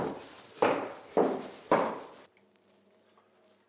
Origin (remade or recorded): recorded